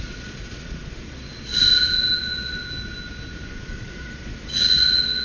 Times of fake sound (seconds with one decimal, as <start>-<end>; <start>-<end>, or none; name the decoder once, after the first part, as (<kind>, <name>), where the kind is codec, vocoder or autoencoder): 0.0-1.5 (vocoder, Vocos); 2.2-2.6; 3.6-5.2